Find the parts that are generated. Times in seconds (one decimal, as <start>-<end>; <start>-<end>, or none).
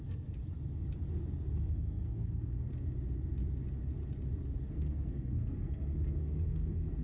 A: 0.0-0.4; 1.5-2.7; 4.7-7.0